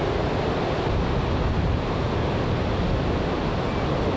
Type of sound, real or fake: real